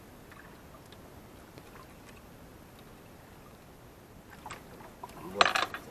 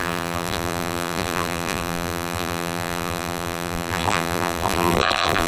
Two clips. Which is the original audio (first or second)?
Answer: first